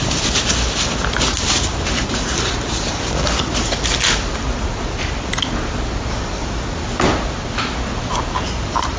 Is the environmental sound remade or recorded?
recorded